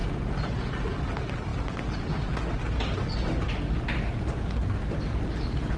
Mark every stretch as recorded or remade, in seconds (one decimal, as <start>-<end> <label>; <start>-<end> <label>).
0.0-0.7 remade; 0.7-5.8 recorded